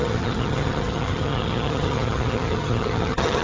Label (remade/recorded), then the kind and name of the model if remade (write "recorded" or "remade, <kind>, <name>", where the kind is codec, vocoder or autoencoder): remade, vocoder, HiFi-GAN